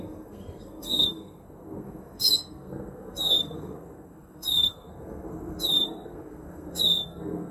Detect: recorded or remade remade